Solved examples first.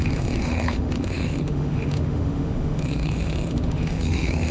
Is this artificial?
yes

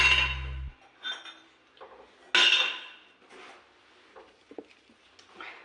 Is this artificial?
no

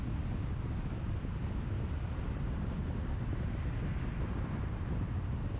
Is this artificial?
no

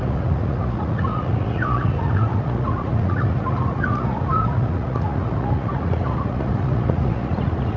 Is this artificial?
yes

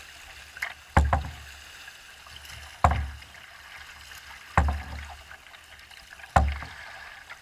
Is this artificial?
no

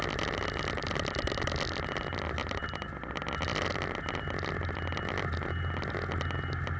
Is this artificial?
no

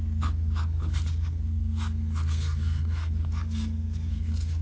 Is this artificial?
yes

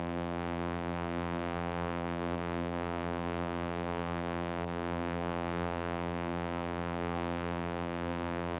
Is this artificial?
yes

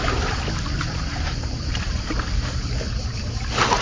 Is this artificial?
yes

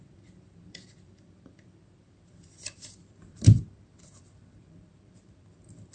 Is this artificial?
yes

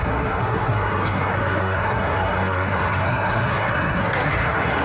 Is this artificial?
yes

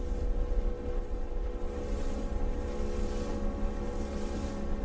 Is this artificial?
no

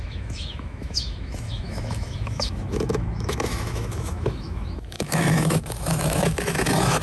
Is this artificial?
yes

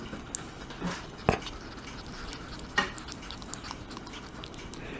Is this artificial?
no